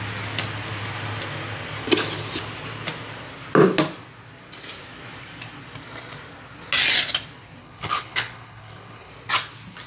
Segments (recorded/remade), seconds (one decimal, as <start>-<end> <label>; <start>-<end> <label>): 0.0-7.6 recorded; 7.6-9.1 remade; 9.1-9.9 recorded